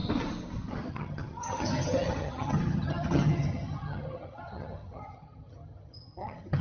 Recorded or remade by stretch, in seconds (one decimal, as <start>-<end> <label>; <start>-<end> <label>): 0.0-0.9 recorded; 0.9-6.6 remade